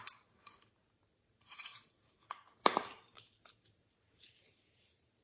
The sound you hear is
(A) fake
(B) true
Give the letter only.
A